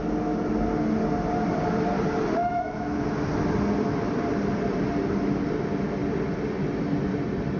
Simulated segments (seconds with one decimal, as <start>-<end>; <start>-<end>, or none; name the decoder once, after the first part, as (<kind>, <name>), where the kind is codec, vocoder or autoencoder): 2.4-3.0 (autoencoder, DAC-VAE)

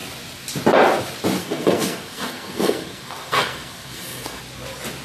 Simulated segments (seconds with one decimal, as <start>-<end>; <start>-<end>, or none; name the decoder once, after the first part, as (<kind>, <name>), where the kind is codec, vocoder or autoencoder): 1.4-4.4 (codec, SNAC)